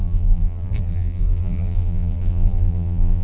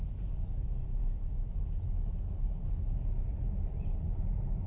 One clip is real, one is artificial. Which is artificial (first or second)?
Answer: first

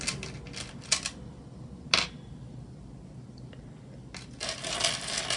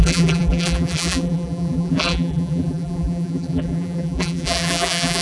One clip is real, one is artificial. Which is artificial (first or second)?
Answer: second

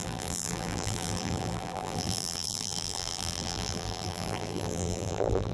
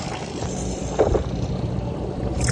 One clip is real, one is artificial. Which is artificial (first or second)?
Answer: first